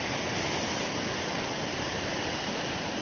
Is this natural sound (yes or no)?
yes